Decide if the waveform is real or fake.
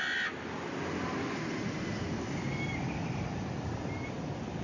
real